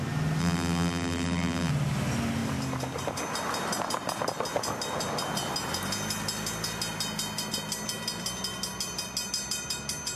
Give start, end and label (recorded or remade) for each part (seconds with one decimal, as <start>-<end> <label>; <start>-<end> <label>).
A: 0.0-0.4 recorded; 0.4-1.7 remade; 1.7-10.2 recorded